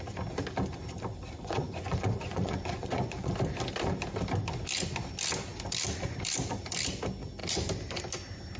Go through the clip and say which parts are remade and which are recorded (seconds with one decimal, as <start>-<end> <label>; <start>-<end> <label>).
0.0-1.4 recorded; 1.4-3.3 remade; 3.3-8.6 recorded